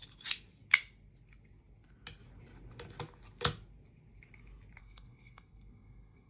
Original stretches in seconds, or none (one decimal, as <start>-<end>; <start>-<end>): 0.0-4.8